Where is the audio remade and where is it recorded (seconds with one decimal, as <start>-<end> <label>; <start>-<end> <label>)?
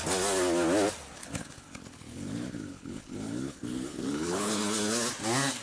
0.0-1.2 recorded; 1.2-4.6 remade; 4.6-5.6 recorded